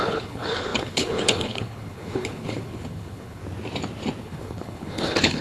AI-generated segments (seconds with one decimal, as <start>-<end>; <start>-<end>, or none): 0.0-3.4; 4.2-5.4